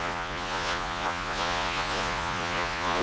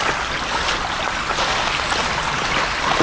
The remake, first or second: first